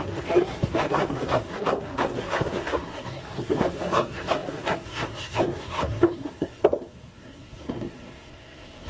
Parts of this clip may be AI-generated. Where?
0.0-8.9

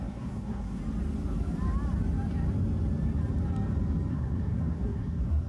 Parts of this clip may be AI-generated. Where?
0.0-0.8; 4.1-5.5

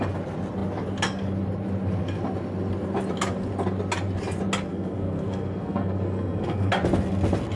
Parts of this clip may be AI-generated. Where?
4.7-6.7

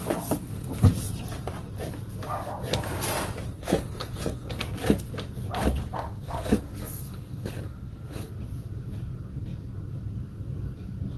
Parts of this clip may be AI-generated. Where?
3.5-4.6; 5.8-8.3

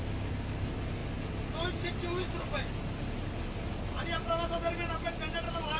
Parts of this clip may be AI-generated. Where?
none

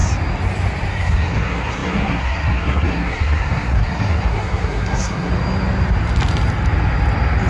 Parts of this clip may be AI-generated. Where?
0.9-5.3